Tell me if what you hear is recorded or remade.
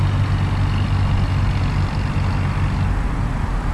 recorded